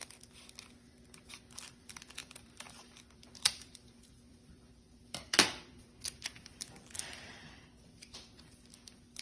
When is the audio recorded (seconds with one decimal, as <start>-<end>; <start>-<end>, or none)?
0.0-1.3